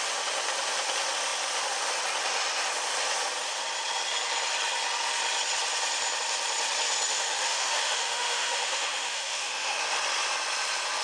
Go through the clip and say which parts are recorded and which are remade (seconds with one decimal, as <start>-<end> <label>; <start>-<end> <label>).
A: 0.0-7.1 recorded; 7.1-9.8 remade; 9.8-11.0 recorded

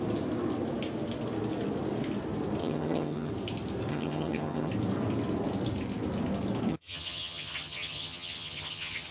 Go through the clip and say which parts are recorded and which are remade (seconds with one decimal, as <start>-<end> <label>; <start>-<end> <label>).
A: 0.0-2.6 recorded; 2.6-3.3 remade; 3.3-3.9 recorded; 3.9-4.7 remade; 4.7-6.7 recorded; 6.7-9.1 remade